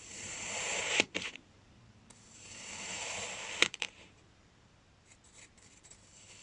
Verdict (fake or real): fake